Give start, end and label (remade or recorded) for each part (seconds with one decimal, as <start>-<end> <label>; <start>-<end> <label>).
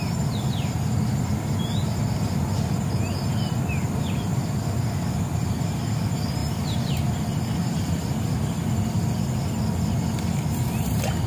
0.0-6.4 recorded; 6.4-6.9 remade; 6.9-11.3 recorded